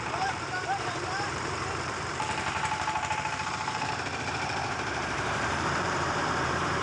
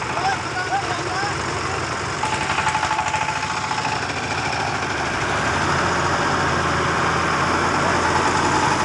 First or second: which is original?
second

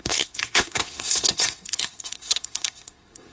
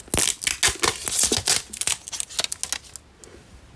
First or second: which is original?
second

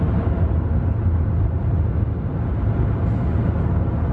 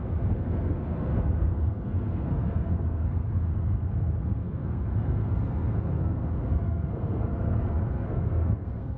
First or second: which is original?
first